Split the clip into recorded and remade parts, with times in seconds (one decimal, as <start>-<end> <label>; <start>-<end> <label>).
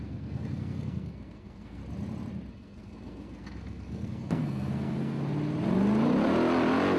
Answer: 0.0-1.8 remade; 1.8-2.5 recorded; 2.5-5.2 remade; 5.2-7.0 recorded